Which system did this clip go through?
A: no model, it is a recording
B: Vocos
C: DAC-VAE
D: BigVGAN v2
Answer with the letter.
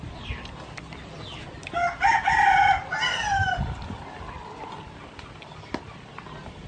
A